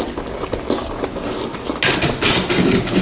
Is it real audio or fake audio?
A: real